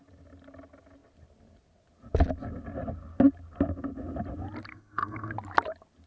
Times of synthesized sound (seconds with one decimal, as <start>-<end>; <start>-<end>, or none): 4.7-5.3